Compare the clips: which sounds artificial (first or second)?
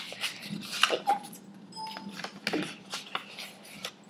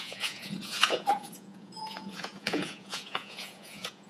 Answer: second